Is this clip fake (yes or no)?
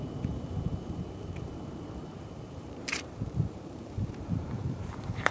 yes